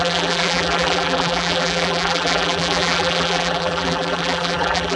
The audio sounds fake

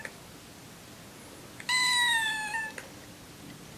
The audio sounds real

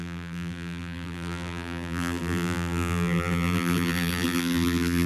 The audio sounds fake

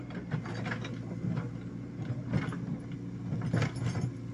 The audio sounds real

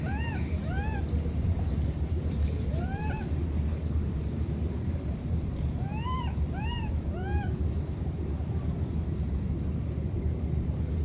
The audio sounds fake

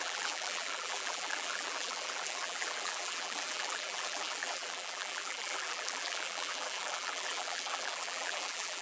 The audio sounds fake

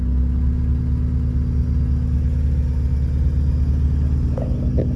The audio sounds real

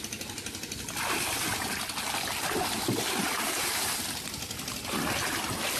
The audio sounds real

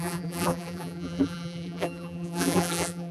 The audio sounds fake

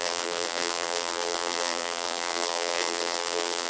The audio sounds fake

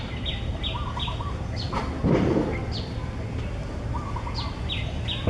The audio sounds real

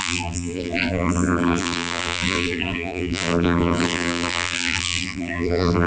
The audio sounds fake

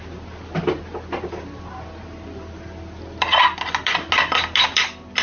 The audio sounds real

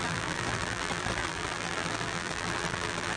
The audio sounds fake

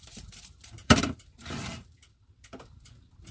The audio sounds fake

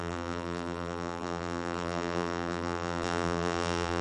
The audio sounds fake